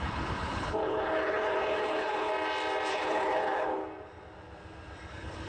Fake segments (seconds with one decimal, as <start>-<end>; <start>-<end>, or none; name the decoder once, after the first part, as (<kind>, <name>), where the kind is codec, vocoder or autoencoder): 0.0-2.3 (codec, HILCodec); 2.9-3.8; 5.1-5.5